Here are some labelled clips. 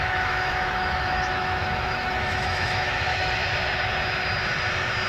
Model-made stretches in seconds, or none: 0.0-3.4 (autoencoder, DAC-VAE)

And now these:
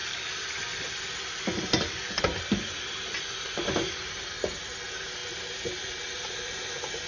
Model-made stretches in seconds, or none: none

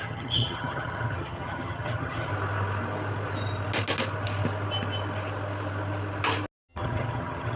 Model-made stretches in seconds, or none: 0.0-2.3 (vocoder, HiFi-GAN); 6.7-7.6

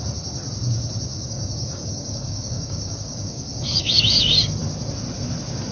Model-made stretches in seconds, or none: 1.1-4.0 (codec, DAC)

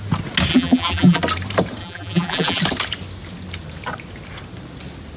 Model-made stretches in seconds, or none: 0.5-1.2 (vocoder, BigVGAN v2); 1.8-2.6

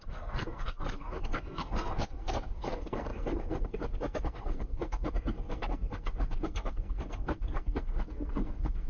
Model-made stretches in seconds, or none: 0.0-8.9 (codec, SNAC)

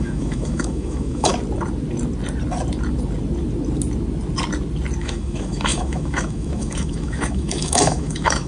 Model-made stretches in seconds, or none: 0.0-1.3 (autoencoder, DAC-VAE); 5.0-8.5